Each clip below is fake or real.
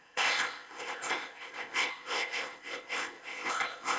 fake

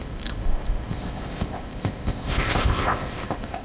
fake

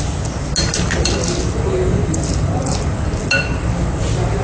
real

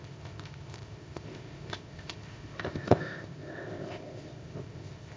fake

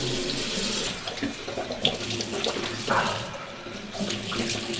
real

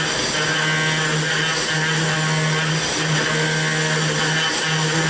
real